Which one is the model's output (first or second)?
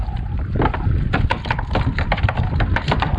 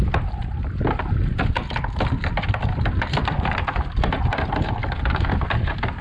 first